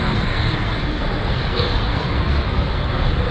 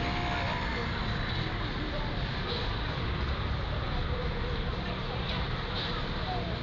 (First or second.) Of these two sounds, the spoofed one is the first